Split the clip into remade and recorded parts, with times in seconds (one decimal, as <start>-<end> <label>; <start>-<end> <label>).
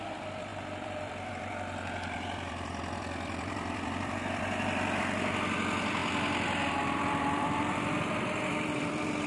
0.0-9.3 remade